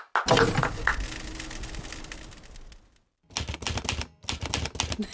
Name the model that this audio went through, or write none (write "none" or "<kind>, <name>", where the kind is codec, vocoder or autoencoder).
none